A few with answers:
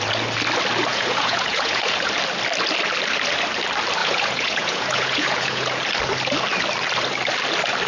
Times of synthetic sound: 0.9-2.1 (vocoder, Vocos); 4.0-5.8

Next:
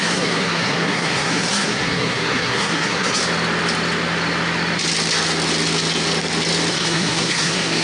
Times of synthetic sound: 0.0-3.2 (codec, SNAC); 6.7-7.8

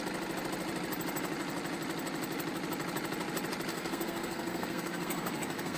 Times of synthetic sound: 3.7-5.8 (codec, SNAC)

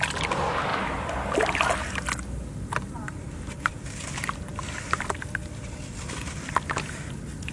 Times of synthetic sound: none